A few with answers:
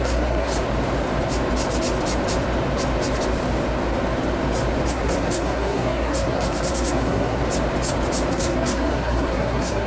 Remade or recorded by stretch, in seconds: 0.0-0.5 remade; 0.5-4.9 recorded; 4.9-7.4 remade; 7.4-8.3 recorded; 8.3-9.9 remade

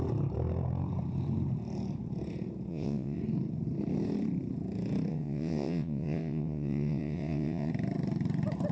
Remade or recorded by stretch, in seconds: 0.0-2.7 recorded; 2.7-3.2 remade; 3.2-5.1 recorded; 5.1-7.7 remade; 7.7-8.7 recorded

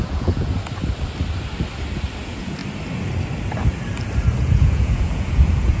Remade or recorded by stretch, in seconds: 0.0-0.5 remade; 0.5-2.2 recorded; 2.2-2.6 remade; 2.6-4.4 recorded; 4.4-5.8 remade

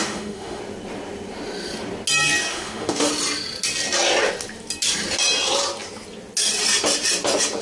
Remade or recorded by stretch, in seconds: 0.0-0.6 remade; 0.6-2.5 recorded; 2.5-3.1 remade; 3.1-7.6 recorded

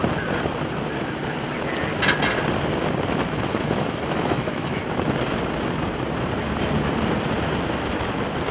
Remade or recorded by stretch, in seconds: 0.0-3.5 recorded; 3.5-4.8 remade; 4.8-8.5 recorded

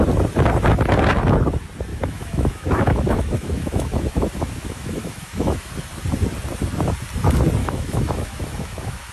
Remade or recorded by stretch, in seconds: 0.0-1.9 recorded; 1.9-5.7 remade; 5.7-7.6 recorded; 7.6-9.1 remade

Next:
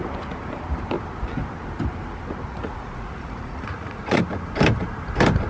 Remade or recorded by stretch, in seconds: 0.0-2.5 recorded; 2.5-4.2 remade; 4.2-5.5 recorded